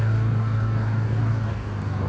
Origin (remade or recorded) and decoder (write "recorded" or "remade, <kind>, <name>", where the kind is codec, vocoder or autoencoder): remade, codec, DAC